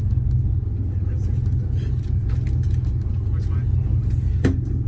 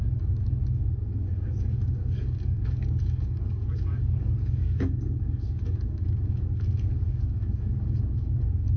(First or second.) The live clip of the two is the first